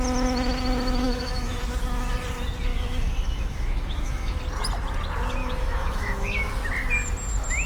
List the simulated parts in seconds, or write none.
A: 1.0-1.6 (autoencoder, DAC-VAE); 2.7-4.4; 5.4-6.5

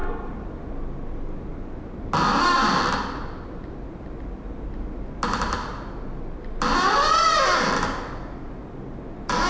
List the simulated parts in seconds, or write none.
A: none

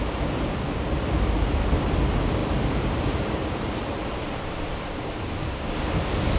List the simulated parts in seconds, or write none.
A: 2.4-5.3 (vocoder, BigVGAN v2)